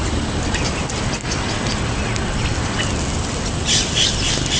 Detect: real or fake real